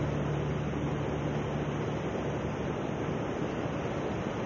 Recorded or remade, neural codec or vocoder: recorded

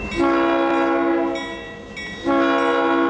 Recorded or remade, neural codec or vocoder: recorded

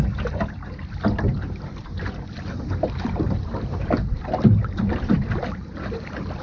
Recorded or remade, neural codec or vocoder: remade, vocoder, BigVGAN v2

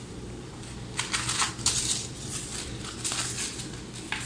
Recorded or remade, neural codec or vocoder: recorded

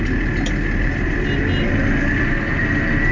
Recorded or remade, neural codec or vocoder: recorded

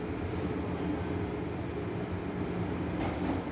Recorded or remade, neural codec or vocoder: recorded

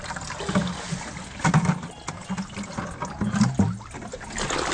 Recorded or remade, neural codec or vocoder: recorded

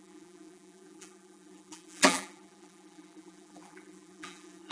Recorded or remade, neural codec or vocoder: remade, vocoder, BigVGAN v2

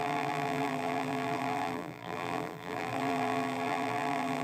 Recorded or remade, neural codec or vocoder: remade, vocoder, BigVGAN v2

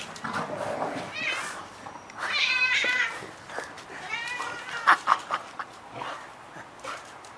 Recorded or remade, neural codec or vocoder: recorded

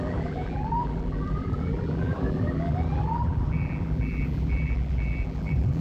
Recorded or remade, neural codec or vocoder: remade, vocoder, BigVGAN v2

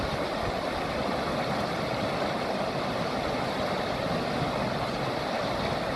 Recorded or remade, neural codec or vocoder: recorded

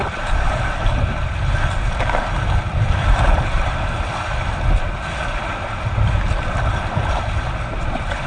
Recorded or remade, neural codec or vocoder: recorded